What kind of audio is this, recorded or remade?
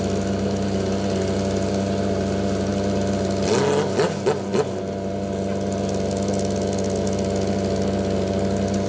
recorded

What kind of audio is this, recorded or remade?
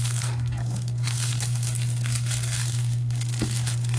remade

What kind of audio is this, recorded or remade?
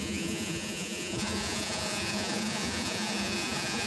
remade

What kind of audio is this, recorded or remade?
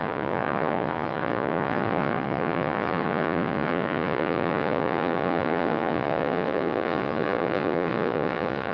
remade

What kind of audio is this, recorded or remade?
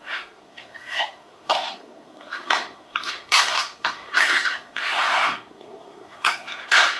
remade